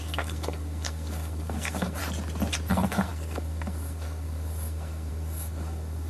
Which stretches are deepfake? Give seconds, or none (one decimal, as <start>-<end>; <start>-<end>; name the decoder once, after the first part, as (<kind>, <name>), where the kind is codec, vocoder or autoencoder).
0.0-2.0 (codec, SNAC); 2.7-6.1